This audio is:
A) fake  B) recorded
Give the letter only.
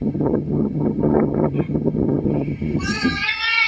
A